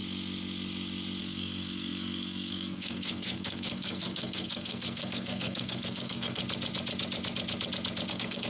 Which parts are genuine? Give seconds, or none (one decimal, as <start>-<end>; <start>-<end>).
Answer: 0.0-1.2; 6.4-8.1